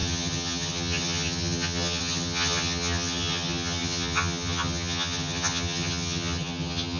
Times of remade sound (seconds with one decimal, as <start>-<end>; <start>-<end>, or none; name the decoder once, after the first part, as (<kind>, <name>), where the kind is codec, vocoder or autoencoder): 0.0-7.0 (vocoder, HiFi-GAN)